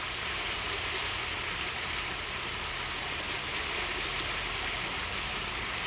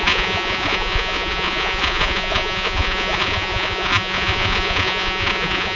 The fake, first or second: second